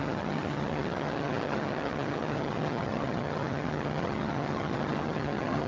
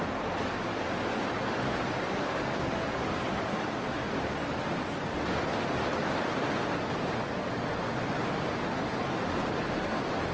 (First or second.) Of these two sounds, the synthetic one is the first